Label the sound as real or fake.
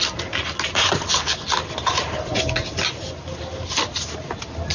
real